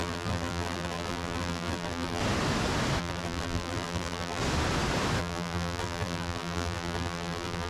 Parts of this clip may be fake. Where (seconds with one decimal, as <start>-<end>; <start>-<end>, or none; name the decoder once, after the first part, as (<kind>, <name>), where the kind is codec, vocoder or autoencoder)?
0.0-2.2 (vocoder, BigVGAN v2); 3.0-4.4; 5.2-7.7

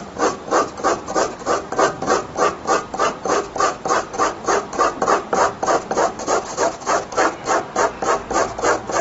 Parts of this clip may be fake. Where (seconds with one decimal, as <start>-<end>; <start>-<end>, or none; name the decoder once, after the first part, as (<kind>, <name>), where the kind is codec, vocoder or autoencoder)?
2.1-2.9 (vocoder, BigVGAN v2)